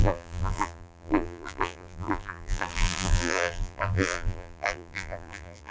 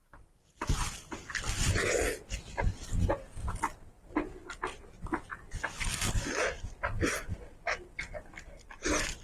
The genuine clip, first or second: second